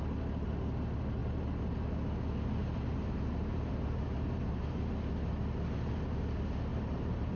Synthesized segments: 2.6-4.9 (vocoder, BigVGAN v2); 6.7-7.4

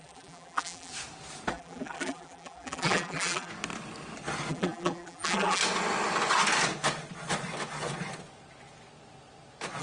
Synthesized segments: 0.0-0.9 (vocoder, BigVGAN v2); 1.5-3.5; 4.5-5.6

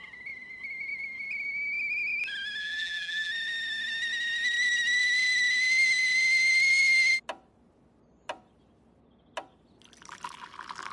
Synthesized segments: 2.6-3.3 (vocoder, BigVGAN v2)

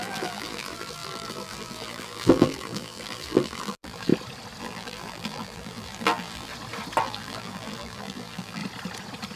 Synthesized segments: 0.0-4.1 (vocoder, BigVGAN v2); 4.6-6.5; 7.0-8.6

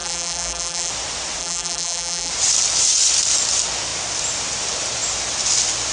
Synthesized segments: 0.0-0.9 (vocoder, BigVGAN v2); 1.4-2.3

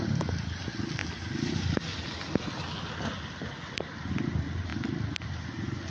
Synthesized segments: none

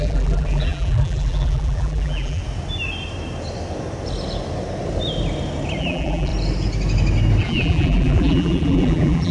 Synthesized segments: 0.0-2.4 (vocoder, BigVGAN v2); 5.8-6.3; 7.4-9.3